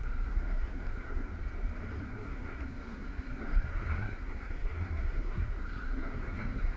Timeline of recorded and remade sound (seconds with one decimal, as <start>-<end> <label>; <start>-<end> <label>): 0.0-1.3 remade; 1.3-2.0 recorded; 2.0-6.8 remade